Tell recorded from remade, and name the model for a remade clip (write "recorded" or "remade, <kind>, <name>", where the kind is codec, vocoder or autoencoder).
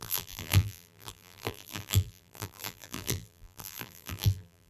remade, vocoder, BigVGAN v2